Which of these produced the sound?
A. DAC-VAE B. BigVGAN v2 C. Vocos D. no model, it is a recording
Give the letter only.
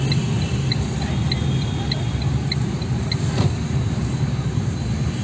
D